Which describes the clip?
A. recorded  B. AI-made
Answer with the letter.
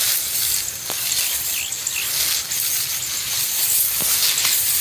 A